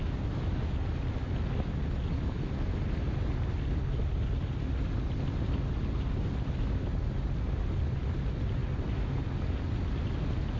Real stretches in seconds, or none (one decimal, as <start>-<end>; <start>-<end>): 0.0-10.6